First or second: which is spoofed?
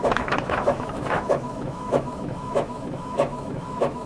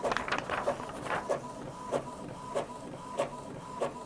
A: first